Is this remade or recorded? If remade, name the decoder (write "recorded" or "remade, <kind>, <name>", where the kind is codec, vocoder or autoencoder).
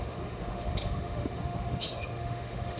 remade, autoencoder, DAC-VAE